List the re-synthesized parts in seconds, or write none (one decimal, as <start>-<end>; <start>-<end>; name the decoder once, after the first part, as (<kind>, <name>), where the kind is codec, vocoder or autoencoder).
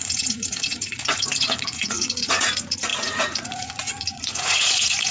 0.0-5.1 (vocoder, Vocos)